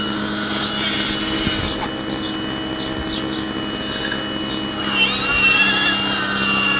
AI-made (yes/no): no